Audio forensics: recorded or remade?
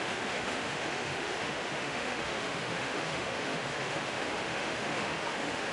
remade